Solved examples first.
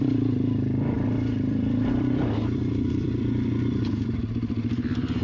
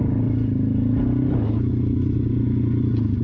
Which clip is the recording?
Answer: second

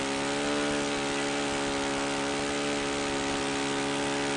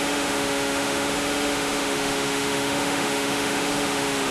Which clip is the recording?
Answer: first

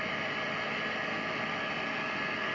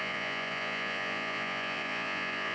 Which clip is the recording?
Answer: first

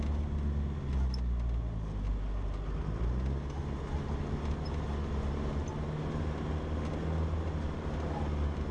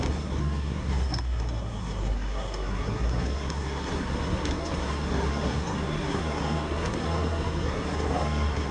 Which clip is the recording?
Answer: first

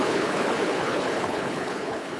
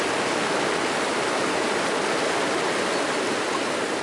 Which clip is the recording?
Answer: second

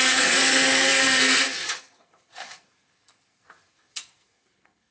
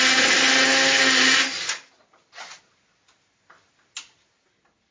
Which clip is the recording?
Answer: second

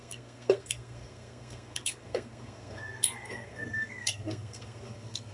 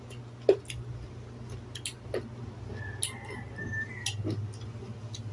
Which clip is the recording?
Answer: second